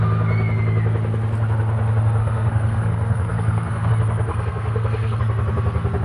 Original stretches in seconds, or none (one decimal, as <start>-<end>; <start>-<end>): 0.0-2.2; 3.9-4.3; 5.2-6.0